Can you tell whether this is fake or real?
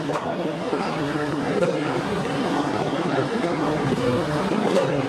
fake